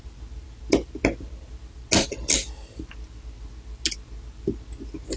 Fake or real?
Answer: real